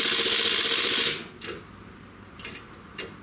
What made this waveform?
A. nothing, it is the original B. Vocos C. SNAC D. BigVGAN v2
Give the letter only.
A